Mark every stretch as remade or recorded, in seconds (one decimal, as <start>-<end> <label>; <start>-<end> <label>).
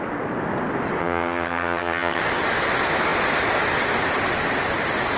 0.0-1.0 recorded; 1.0-2.2 remade; 2.2-5.2 recorded